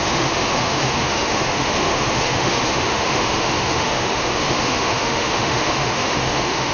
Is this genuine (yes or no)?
no